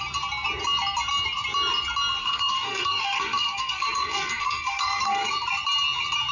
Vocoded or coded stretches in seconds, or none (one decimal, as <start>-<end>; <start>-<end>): 2.2-5.3